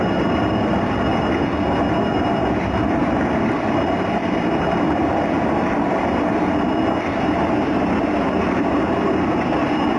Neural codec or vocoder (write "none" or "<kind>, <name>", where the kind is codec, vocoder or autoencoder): none